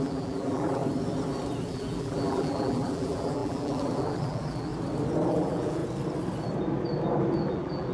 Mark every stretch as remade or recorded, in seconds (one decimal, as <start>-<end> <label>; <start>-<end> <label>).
0.0-0.8 remade; 0.8-1.7 recorded; 1.7-4.7 remade; 4.7-5.3 recorded; 5.3-5.8 remade; 5.8-7.5 recorded; 7.5-7.9 remade